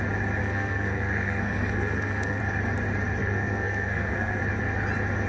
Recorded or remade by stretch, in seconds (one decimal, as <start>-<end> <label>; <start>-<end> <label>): 0.0-0.4 recorded; 0.4-2.4 remade; 2.4-3.2 recorded; 3.2-4.4 remade; 4.4-5.3 recorded